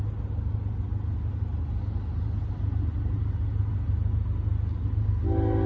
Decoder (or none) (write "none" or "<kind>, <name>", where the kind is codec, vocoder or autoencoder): none